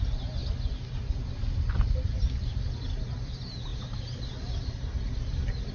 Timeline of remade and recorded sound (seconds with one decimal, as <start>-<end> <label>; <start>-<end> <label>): 0.0-5.7 recorded